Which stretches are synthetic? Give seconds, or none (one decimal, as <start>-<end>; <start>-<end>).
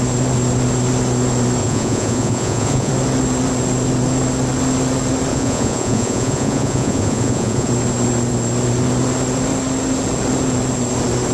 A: 1.6-2.9; 5.3-7.7